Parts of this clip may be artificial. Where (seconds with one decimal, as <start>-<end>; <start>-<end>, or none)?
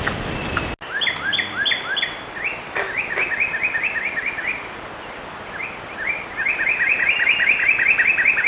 4.5-8.5